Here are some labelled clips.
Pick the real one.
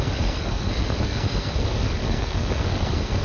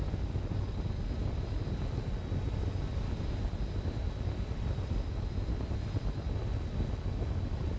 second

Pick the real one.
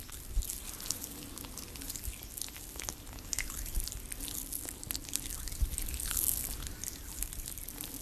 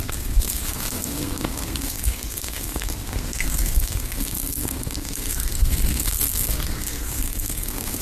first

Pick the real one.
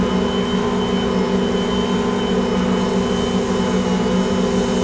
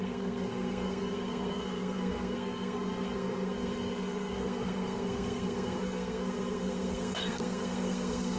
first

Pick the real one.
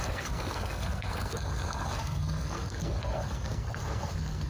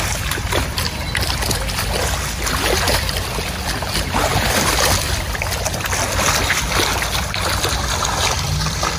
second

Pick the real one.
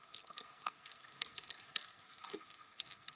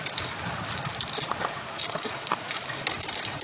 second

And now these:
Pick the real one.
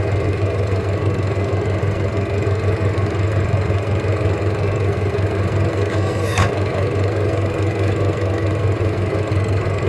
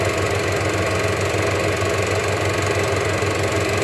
second